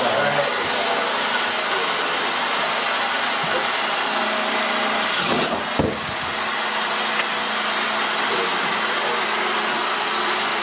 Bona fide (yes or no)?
yes